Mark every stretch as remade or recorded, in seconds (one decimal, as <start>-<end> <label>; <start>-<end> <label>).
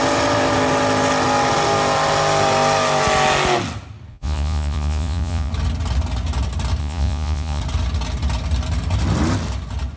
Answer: 0.0-4.1 recorded; 4.1-5.5 remade; 5.5-6.8 recorded; 6.8-7.6 remade; 7.6-10.0 recorded